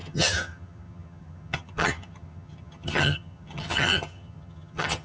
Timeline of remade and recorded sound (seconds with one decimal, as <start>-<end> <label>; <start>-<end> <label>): 0.0-5.0 remade